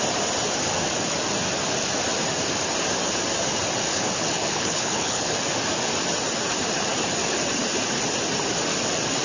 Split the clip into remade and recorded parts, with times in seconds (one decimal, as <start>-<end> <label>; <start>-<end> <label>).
0.0-3.9 recorded; 3.9-5.3 remade; 5.3-9.2 recorded